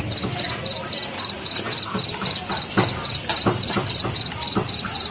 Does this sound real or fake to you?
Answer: fake